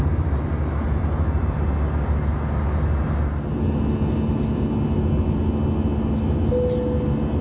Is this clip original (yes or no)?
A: yes